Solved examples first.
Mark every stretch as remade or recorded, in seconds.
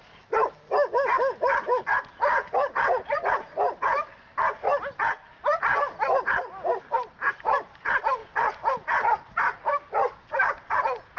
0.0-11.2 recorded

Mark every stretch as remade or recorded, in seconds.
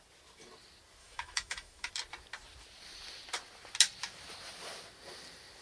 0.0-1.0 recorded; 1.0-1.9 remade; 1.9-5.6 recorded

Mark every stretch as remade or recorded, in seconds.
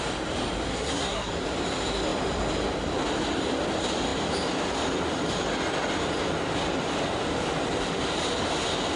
0.0-0.7 recorded; 0.7-1.3 remade; 1.3-9.0 recorded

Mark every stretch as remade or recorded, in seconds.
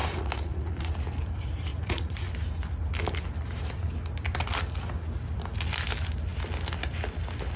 0.0-0.9 remade; 0.9-1.7 recorded; 1.7-2.3 remade; 2.3-7.6 recorded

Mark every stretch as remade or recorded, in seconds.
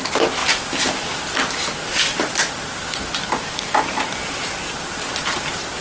0.0-5.8 recorded